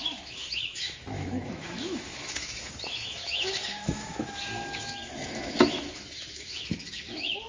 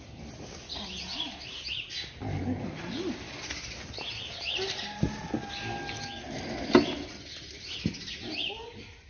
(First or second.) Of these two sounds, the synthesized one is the first